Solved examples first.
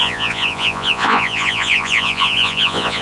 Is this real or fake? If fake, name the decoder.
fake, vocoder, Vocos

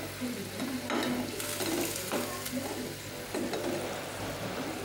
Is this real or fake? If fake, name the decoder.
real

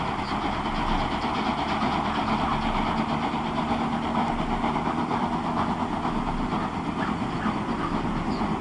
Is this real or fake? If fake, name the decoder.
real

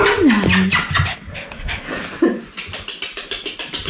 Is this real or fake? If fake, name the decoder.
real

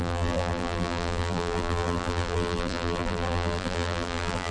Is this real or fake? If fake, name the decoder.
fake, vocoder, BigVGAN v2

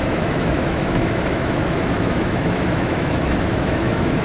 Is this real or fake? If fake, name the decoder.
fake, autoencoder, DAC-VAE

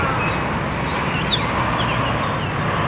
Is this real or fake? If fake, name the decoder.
real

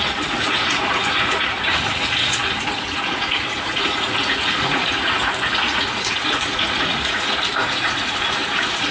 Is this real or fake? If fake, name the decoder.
fake, vocoder, Vocos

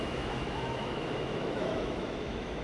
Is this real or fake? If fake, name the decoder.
fake, autoencoder, DAC-VAE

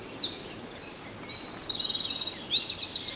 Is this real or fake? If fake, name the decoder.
real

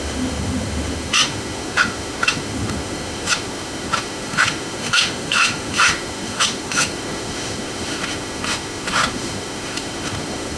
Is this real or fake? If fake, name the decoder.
fake, autoencoder, DAC-VAE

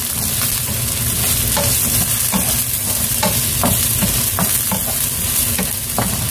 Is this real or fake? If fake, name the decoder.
real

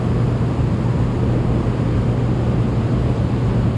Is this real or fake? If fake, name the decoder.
real